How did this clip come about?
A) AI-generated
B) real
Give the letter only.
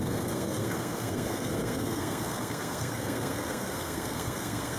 A